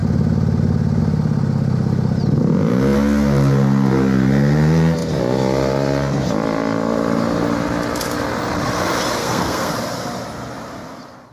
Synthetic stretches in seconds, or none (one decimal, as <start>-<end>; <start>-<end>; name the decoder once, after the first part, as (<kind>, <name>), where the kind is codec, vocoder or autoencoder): 9.2-9.7 (codec, SNAC)